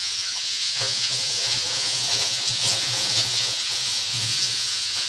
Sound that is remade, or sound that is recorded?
remade